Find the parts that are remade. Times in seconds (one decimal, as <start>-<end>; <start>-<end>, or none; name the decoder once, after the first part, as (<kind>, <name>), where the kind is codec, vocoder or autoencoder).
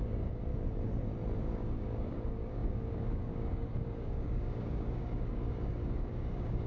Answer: 0.0-0.5 (codec, DAC); 1.4-6.7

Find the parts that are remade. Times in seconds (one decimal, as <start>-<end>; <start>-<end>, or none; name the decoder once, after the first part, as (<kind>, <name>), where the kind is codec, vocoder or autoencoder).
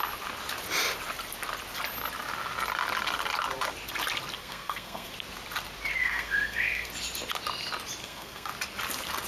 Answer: 4.4-5.1 (codec, SNAC); 6.0-6.9; 8.0-8.5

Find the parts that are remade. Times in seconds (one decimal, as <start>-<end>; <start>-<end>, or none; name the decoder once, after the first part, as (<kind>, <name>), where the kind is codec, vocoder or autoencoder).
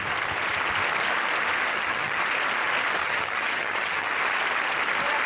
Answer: 1.7-2.2 (vocoder, HiFi-GAN); 3.0-4.1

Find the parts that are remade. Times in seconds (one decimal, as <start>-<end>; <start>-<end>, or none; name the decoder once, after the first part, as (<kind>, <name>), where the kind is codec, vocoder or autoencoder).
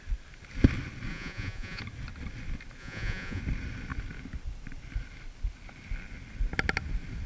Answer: 1.1-1.8 (vocoder, Vocos); 2.8-3.4